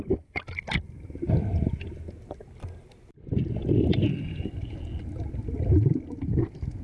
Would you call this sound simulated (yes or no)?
no